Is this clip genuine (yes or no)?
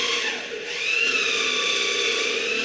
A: yes